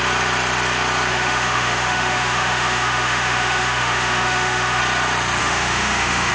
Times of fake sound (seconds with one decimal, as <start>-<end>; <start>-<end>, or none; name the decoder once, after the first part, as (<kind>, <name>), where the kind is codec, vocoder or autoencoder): 1.1-4.8 (autoencoder, DAC-VAE); 5.4-6.3